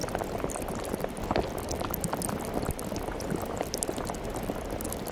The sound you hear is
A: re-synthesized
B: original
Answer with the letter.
B